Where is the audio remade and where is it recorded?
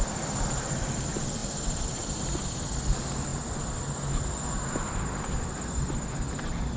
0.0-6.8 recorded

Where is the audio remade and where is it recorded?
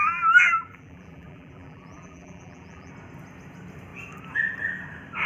0.0-2.9 remade; 2.9-5.3 recorded